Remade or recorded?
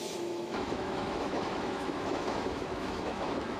remade